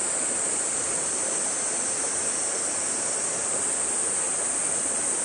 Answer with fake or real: real